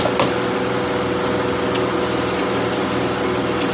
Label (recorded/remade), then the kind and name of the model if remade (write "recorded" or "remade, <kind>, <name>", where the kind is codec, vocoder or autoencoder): recorded